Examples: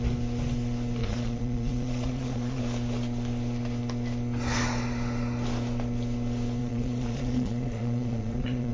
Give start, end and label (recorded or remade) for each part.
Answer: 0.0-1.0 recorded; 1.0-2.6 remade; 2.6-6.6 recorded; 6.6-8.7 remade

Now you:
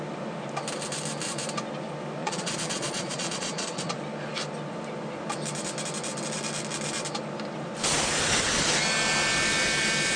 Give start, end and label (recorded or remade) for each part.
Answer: 0.0-2.2 recorded; 2.2-4.0 remade; 4.0-10.2 recorded

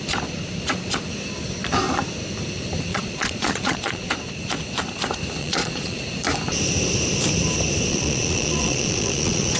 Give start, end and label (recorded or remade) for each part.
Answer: 0.0-2.9 recorded; 2.9-4.1 remade; 4.1-5.4 recorded; 5.4-6.0 remade; 6.0-7.9 recorded; 7.9-9.6 remade

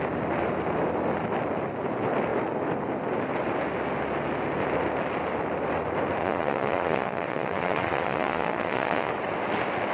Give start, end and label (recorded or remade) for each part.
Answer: 0.0-6.2 recorded; 6.2-9.1 remade; 9.1-9.9 recorded

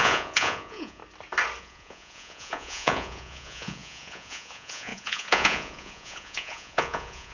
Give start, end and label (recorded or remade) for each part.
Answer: 0.0-1.0 remade; 1.0-1.6 recorded; 1.6-7.3 remade

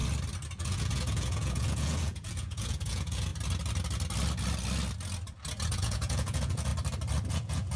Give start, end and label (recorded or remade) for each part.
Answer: 0.0-0.6 recorded; 0.6-3.3 remade; 3.3-5.7 recorded; 5.7-6.7 remade; 6.7-7.3 recorded; 7.3-7.8 remade

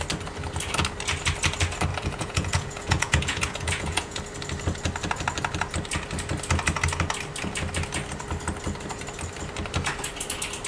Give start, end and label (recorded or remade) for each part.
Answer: 0.0-1.9 recorded; 1.9-4.2 remade; 4.2-10.7 recorded